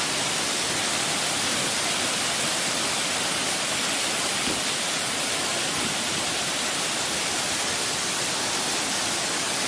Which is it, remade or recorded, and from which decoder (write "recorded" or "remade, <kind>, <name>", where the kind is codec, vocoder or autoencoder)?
recorded